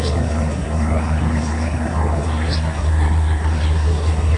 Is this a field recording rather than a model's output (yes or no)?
no